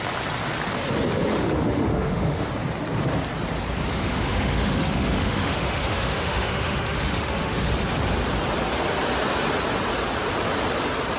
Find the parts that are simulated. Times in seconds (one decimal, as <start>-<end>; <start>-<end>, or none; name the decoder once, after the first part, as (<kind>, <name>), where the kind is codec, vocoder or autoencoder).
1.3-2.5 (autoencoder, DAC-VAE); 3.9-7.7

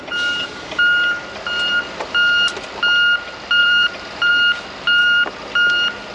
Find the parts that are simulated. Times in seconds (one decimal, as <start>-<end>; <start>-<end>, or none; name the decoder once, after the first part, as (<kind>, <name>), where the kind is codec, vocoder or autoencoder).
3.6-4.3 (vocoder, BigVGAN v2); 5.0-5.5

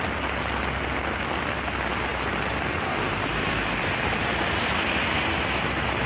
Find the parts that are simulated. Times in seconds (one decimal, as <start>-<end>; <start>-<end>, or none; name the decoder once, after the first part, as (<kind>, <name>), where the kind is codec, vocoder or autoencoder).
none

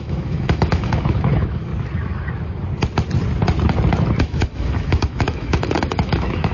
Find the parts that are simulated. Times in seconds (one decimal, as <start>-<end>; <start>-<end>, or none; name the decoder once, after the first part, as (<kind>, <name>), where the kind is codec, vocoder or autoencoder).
0.0-1.7 (autoencoder, DAC-VAE); 4.2-6.5

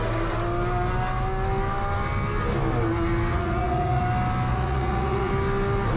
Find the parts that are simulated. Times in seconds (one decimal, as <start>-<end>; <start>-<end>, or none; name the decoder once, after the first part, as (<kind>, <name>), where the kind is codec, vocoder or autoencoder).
3.3-4.0 (vocoder, Vocos); 4.5-5.3